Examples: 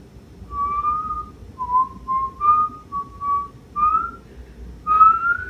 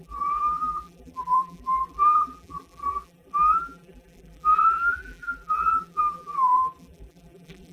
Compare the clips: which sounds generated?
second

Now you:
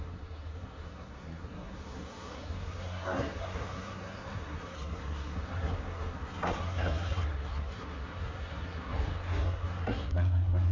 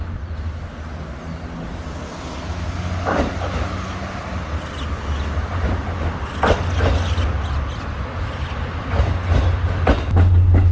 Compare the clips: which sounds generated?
first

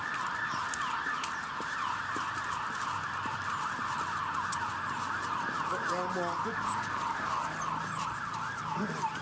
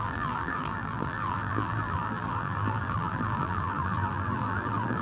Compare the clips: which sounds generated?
second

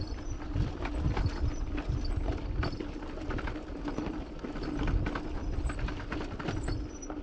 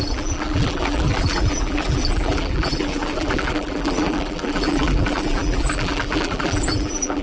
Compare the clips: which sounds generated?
second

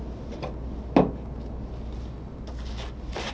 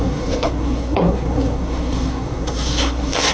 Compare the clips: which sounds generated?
second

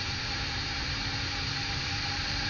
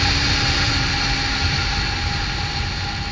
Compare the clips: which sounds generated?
first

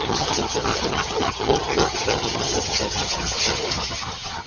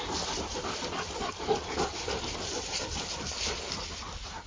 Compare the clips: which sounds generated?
first